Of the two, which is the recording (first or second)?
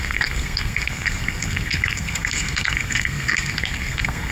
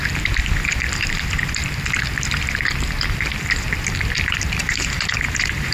second